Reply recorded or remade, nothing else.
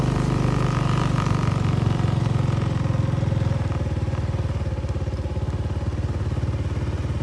recorded